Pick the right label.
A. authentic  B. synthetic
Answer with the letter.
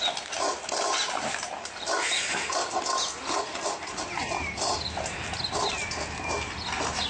A